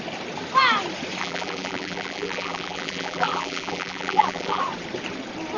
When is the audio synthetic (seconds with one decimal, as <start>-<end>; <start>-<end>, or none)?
1.2-4.6